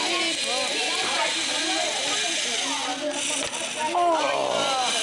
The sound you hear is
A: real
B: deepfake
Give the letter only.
A